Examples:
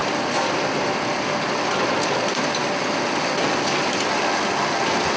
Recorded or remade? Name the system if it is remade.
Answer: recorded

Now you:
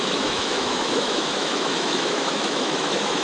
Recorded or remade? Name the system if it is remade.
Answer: remade, autoencoder, DAC-VAE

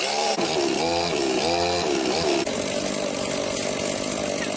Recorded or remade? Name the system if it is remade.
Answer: recorded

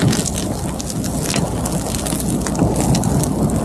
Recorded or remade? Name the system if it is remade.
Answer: recorded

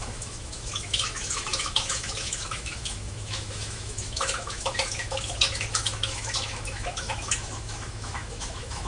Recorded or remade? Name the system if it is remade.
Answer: remade, autoencoder, DAC-VAE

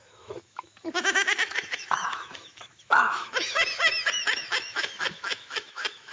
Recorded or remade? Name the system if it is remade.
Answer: remade, autoencoder, DAC-VAE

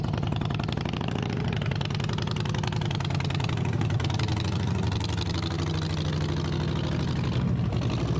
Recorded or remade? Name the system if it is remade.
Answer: recorded